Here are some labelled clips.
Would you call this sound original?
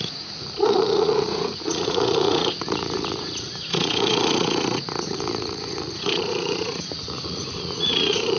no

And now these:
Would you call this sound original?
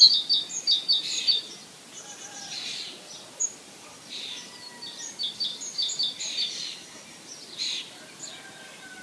yes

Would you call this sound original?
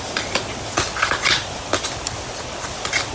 yes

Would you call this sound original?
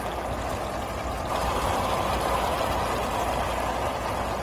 yes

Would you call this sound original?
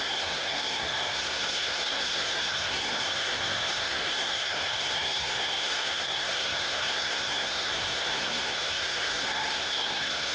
no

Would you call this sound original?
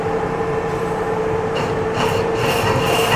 no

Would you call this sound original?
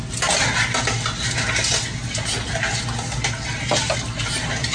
yes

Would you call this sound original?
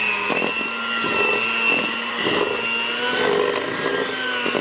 yes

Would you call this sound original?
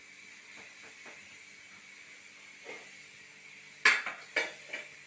yes